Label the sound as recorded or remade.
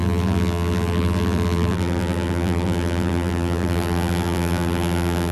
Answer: remade